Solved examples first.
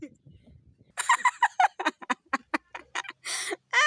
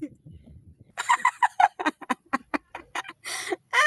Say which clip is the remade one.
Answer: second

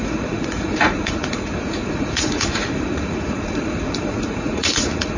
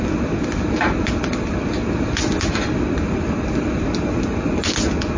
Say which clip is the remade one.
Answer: first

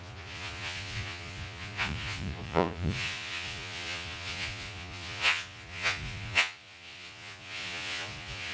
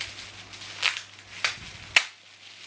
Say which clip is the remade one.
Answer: first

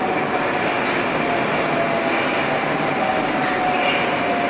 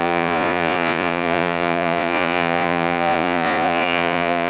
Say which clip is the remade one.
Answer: second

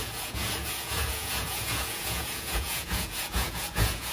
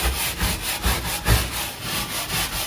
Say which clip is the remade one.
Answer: first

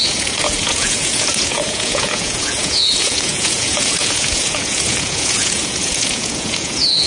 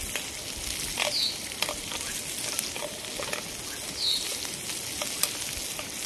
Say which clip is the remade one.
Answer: first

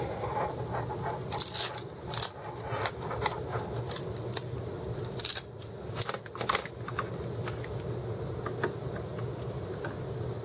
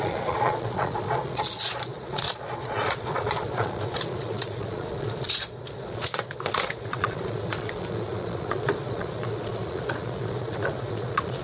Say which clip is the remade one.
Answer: second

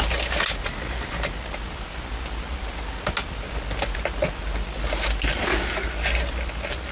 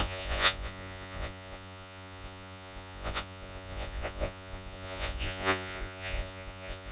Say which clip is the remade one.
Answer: second